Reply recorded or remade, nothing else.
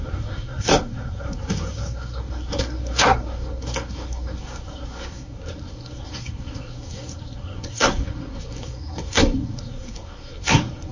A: remade